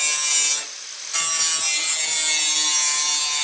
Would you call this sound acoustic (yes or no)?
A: yes